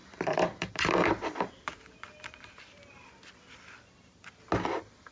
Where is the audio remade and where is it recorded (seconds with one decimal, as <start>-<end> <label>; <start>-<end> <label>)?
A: 0.0-1.5 remade; 1.5-5.1 recorded